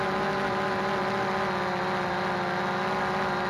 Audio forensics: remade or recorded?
recorded